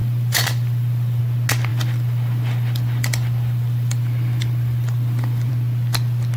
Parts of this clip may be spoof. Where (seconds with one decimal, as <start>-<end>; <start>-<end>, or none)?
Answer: 0.0-1.2; 1.7-5.5

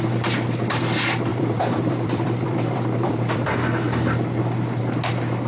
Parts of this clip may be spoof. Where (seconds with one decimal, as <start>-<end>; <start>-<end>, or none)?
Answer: 1.3-3.5